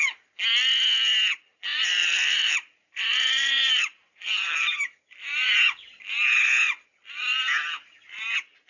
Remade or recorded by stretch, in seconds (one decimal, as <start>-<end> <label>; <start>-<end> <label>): 0.0-1.7 recorded; 1.7-5.0 remade; 5.0-8.7 recorded